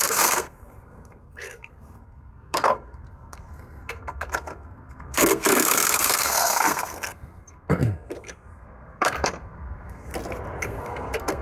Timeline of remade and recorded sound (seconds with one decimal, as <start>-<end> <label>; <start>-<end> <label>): 0.0-10.1 remade; 10.1-10.6 recorded; 10.6-11.4 remade